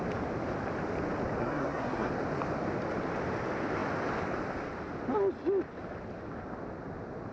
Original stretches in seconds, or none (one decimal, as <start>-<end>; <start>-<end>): 0.0-1.4; 2.1-7.3